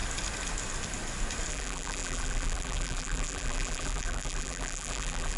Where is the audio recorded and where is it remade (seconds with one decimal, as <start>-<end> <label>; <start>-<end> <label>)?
0.0-1.5 recorded; 1.5-5.4 remade